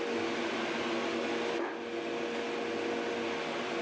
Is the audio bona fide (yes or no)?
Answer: yes